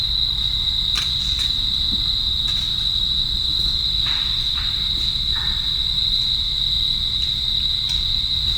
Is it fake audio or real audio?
real